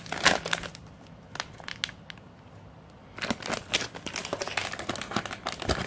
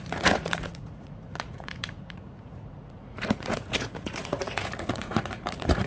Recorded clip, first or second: first